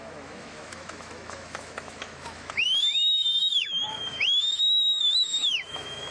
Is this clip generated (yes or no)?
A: yes